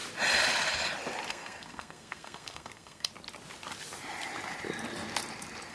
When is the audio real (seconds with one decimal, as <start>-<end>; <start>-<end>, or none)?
0.0-1.3; 3.1-5.7

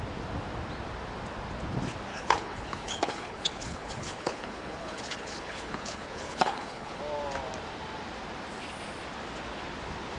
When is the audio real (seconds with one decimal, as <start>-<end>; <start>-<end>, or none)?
0.0-2.1; 7.0-10.2

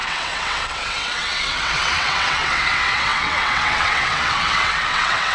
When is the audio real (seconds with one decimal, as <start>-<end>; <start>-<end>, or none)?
none

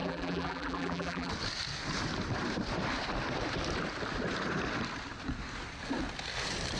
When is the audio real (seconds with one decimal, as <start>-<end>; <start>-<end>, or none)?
1.3-6.8

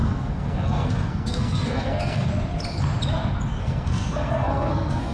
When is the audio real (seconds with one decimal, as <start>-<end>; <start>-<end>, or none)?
2.3-3.6